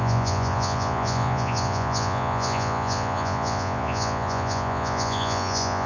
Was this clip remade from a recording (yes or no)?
yes